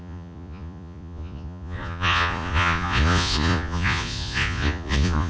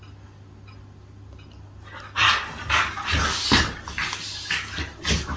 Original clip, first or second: second